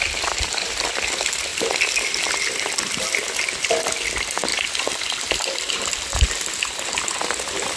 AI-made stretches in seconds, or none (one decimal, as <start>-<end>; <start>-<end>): 1.5-2.2